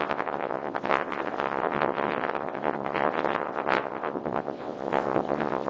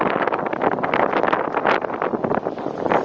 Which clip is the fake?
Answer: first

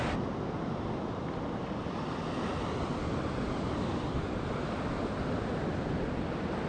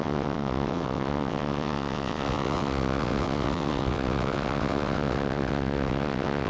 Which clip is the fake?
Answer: second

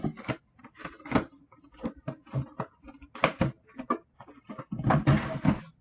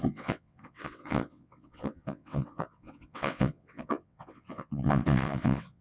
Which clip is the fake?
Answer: second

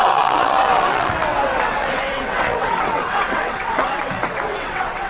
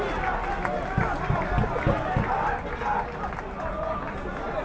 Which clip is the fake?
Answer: first